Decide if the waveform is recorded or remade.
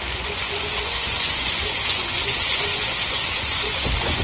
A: remade